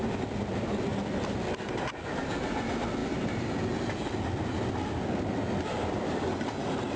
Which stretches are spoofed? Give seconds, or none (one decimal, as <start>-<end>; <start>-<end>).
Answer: 3.0-3.5; 5.7-6.3